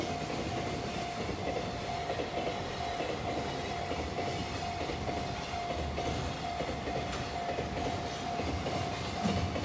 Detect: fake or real real